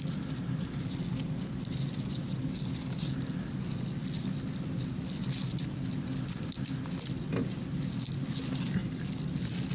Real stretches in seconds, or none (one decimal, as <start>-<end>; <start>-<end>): 0.0-9.7

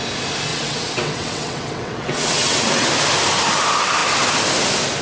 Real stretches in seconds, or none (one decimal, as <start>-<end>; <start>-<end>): 0.0-0.5; 2.9-5.0

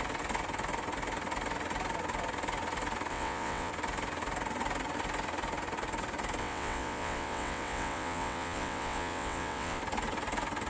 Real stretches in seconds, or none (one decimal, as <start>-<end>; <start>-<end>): 0.0-3.1; 3.7-6.4; 9.8-10.7

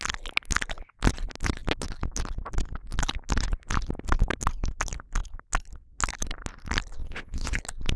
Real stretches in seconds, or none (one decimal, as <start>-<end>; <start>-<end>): 0.0-7.0; 7.6-8.0

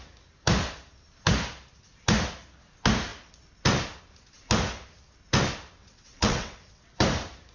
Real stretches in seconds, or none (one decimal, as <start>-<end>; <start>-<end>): 0.0-5.8; 6.8-7.5

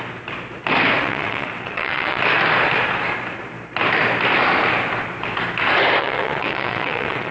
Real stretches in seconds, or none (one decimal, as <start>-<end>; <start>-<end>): 0.0-1.0; 2.2-6.0

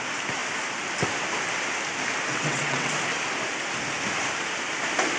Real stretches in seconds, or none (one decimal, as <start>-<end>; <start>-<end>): 0.0-2.3; 2.9-5.2